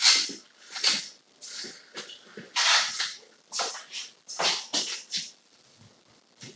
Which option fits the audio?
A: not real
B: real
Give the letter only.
B